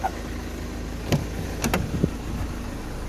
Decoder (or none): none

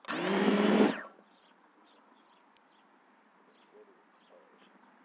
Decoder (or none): none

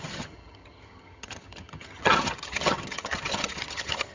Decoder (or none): vocoder, HiFi-GAN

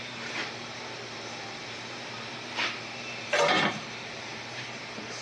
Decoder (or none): vocoder, BigVGAN v2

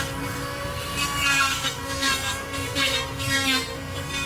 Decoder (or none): codec, SNAC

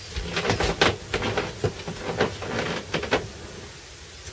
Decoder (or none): none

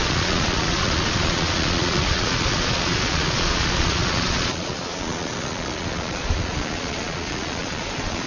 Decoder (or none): vocoder, Vocos